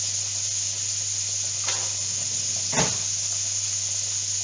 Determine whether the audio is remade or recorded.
recorded